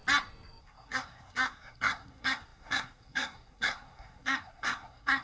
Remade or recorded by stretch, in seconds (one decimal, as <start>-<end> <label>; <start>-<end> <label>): 0.0-0.6 recorded; 0.6-5.2 remade